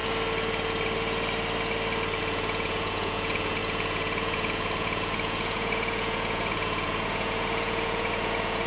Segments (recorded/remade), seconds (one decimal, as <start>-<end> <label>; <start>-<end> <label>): 0.0-2.2 recorded; 2.2-8.7 remade